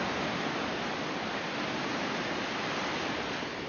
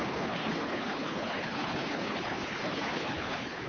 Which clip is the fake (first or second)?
second